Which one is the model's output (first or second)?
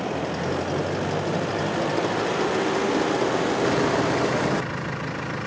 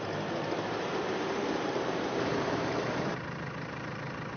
second